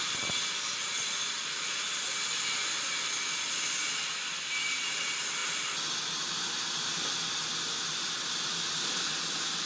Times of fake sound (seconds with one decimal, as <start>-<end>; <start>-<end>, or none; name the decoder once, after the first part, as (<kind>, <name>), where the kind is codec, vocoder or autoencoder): none